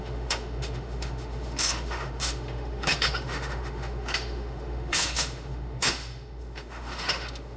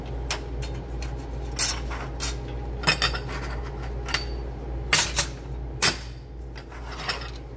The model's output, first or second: first